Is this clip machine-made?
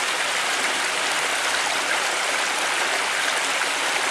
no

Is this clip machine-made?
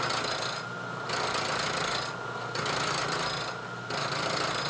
no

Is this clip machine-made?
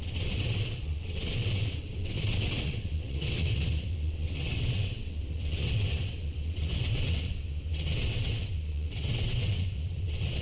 yes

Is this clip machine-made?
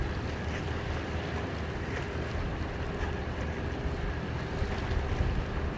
no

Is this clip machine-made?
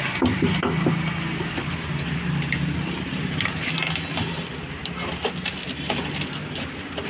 no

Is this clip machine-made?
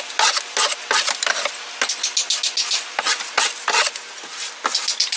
no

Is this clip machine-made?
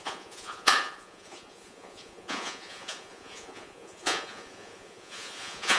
yes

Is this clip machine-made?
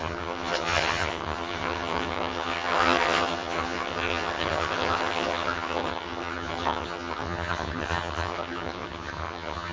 yes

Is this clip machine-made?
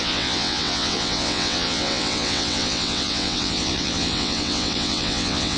yes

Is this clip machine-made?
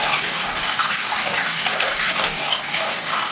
yes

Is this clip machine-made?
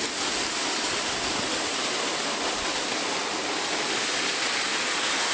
no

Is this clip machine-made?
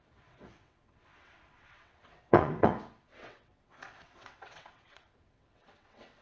yes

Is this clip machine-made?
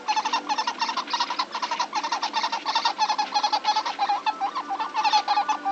no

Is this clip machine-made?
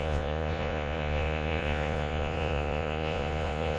yes